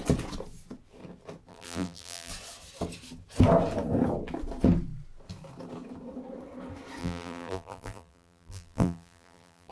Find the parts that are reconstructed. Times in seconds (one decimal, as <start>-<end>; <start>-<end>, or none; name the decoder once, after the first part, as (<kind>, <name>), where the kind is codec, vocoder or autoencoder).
1.5-2.3 (vocoder, BigVGAN v2); 7.0-9.7